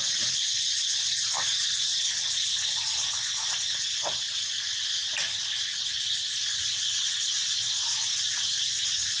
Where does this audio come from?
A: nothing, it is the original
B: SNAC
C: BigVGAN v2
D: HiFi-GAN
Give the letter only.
A